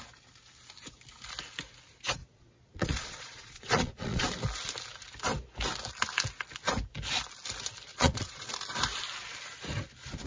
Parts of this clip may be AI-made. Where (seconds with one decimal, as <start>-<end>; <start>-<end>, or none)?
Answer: 2.2-4.3; 7.9-8.5